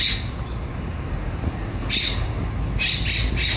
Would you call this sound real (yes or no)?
yes